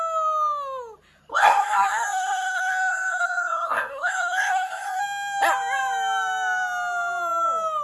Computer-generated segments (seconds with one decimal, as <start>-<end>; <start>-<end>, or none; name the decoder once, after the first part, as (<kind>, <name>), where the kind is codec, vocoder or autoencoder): 1.3-5.0 (codec, SNAC)